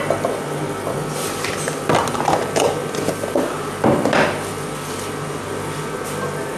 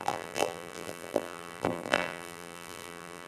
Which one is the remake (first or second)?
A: second